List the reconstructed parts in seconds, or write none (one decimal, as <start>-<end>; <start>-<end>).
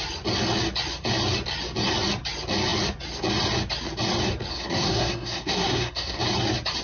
4.5-6.2